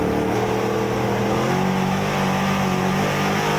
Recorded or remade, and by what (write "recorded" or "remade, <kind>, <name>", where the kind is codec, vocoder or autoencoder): recorded